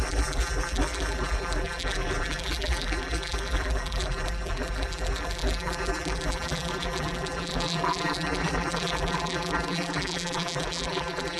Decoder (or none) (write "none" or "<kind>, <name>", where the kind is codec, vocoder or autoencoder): vocoder, BigVGAN v2